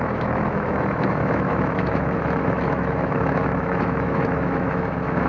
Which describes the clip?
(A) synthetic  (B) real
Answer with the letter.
A